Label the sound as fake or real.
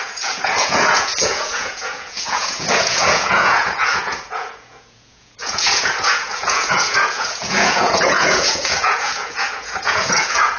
fake